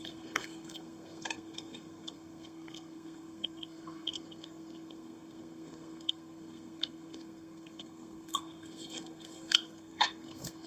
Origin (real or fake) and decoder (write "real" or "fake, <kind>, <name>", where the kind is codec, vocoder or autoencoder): fake, codec, SNAC